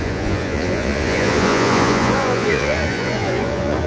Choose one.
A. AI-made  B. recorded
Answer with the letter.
A